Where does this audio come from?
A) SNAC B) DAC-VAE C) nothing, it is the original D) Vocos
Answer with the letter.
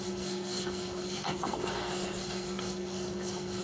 A